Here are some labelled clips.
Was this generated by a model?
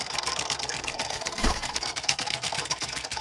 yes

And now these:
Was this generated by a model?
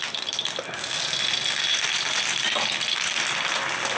no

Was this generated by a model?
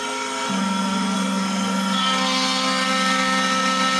yes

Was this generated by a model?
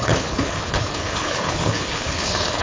yes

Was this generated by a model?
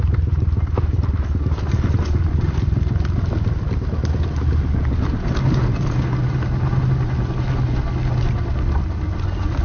no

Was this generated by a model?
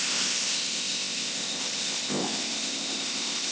yes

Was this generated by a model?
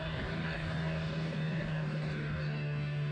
yes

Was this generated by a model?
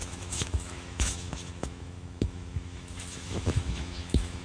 yes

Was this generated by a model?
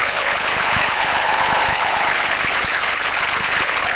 yes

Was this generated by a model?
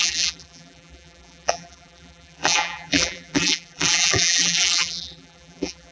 yes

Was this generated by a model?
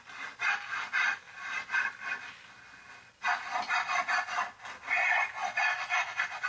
no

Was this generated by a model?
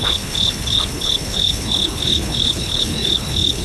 yes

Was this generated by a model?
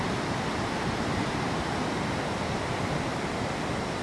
no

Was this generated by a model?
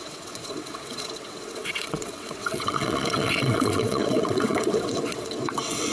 yes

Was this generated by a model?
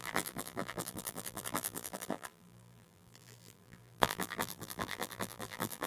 yes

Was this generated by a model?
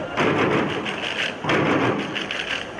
no